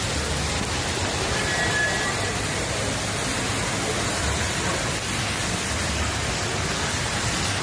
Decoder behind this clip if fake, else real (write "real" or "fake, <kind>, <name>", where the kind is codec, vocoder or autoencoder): real